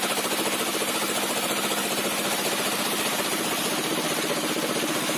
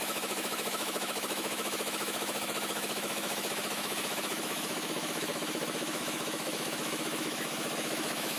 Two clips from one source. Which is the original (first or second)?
first